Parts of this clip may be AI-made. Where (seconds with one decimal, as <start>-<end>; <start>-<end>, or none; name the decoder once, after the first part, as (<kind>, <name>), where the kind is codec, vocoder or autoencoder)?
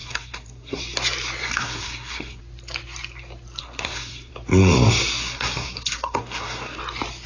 0.0-0.8 (codec, SNAC); 1.4-2.4; 3.6-4.3; 5.2-6.8